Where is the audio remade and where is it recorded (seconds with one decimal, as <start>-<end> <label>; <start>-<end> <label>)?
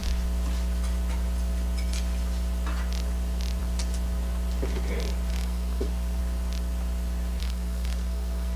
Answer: 0.0-5.3 recorded; 5.3-6.2 remade; 6.2-7.4 recorded; 7.4-8.6 remade